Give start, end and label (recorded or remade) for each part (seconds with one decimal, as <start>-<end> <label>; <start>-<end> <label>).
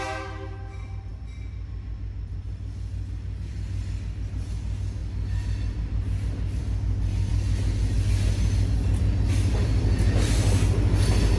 0.0-11.4 recorded